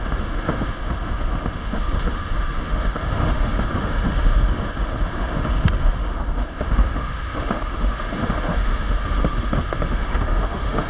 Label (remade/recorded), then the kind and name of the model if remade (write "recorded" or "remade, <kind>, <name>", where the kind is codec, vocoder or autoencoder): remade, autoencoder, DAC-VAE